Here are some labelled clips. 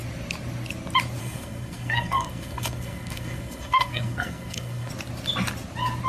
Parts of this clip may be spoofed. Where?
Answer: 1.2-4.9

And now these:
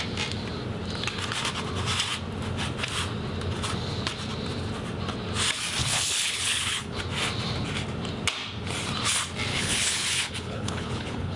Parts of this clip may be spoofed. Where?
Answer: 5.8-7.0; 9.5-11.4

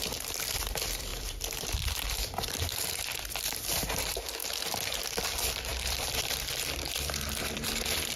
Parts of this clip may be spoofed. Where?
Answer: 0.0-4.4; 5.2-8.2

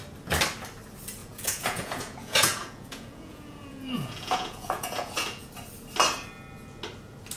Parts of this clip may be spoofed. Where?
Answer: 1.2-5.5